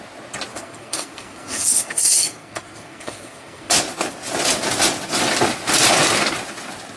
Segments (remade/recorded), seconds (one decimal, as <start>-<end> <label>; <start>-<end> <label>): 0.0-0.5 recorded; 0.5-3.7 remade; 3.7-7.0 recorded